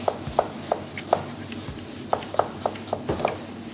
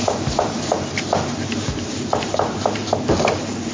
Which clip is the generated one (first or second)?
second